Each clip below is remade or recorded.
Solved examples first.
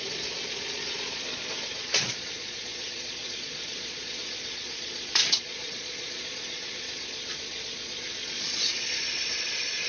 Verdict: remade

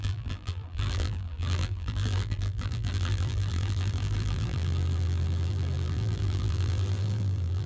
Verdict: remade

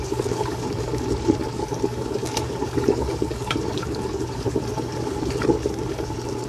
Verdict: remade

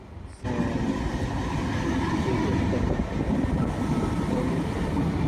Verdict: recorded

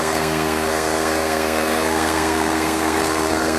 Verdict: remade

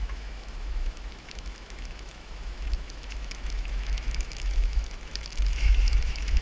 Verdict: remade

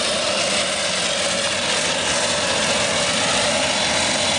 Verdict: recorded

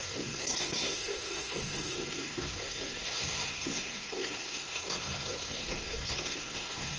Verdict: remade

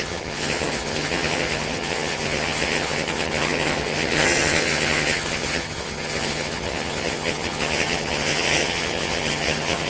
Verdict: remade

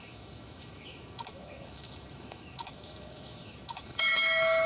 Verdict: remade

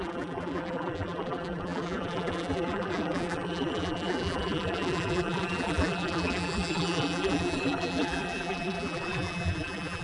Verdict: remade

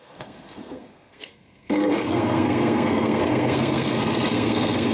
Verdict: remade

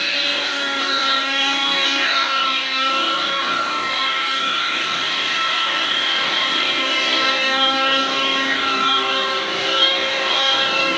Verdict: remade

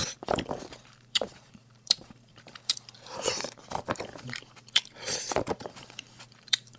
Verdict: remade